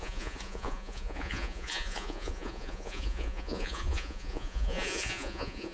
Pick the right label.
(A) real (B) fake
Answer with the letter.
B